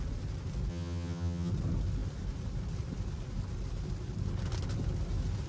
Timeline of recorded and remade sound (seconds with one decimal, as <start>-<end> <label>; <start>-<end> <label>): 0.0-0.7 recorded; 0.7-1.5 remade; 1.5-5.5 recorded